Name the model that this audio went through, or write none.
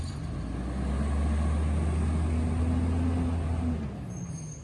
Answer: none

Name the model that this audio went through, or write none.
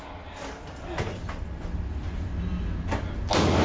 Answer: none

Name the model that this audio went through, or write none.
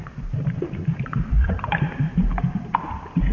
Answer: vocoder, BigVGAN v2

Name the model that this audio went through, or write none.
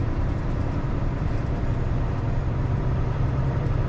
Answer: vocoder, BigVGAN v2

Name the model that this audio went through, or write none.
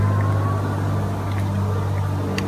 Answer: none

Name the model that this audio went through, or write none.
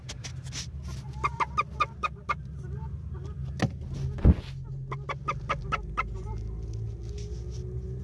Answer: none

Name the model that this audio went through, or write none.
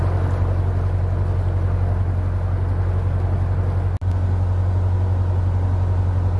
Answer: none